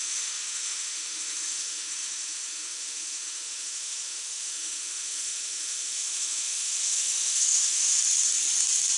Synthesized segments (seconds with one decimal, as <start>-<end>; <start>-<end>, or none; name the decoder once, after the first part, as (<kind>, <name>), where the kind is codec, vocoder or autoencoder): 0.0-8.0 (autoencoder, DAC-VAE)